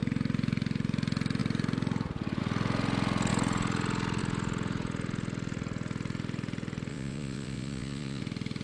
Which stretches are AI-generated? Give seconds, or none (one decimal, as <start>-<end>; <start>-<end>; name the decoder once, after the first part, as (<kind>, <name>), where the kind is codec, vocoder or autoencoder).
6.9-8.2 (vocoder, WaveNeXt)